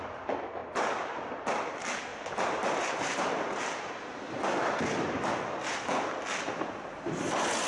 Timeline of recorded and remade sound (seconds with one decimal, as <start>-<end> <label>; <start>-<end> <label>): 0.0-2.1 recorded; 2.1-3.9 remade; 3.9-7.7 recorded